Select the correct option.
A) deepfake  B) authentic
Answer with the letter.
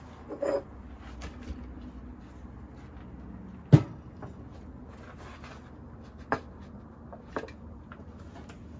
B